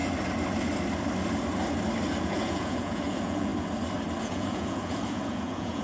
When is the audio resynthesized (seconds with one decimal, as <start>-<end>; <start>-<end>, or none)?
2.2-3.5; 4.2-5.8